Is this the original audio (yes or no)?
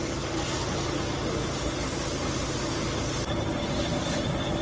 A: yes